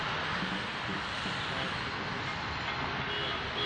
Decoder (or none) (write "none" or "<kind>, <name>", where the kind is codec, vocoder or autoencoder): none